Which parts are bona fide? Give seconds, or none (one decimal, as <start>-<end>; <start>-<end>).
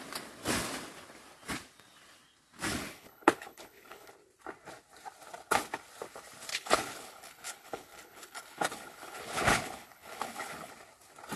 0.0-2.7; 4.1-6.5; 10.7-11.4